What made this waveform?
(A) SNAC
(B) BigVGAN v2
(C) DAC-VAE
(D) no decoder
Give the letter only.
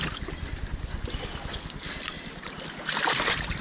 D